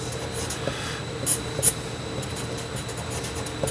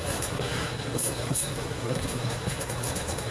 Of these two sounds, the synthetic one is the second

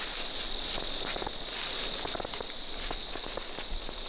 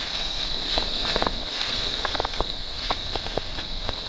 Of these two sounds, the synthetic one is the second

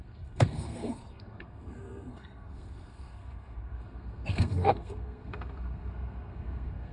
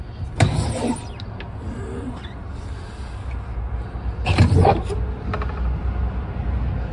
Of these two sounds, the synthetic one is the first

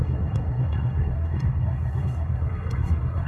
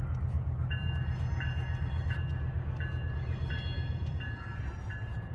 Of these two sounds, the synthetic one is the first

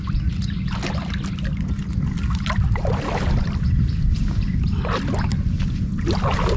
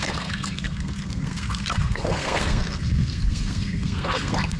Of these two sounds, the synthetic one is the second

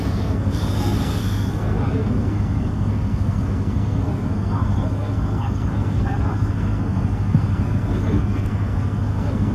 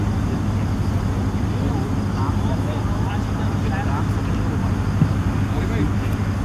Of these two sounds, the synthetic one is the first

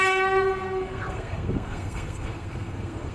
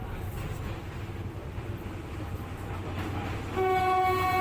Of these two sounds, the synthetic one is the first